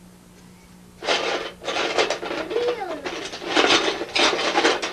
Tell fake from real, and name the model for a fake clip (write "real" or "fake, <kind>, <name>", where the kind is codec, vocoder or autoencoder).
real